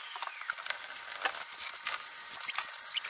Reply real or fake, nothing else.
real